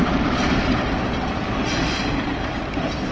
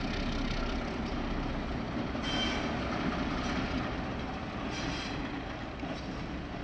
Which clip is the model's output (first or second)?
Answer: first